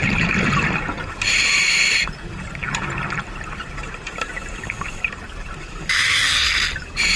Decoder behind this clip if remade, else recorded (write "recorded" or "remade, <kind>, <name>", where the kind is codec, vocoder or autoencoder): remade, vocoder, BigVGAN v2